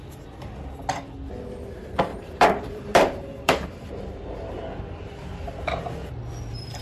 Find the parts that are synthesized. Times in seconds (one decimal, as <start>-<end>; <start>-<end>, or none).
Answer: 2.1-5.5